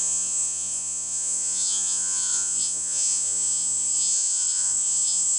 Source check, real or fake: fake